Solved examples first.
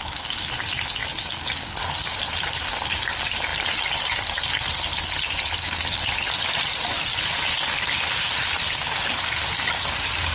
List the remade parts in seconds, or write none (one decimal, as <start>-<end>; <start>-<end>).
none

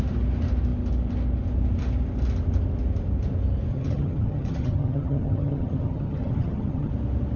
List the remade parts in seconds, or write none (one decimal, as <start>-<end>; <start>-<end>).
3.7-6.9

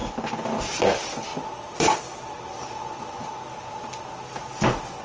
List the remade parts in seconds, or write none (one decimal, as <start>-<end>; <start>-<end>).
none